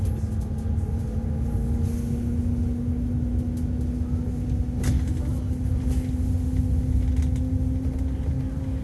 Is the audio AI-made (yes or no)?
no